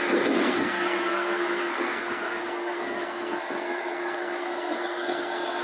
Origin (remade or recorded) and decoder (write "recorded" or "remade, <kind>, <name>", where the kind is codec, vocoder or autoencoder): remade, codec, SNAC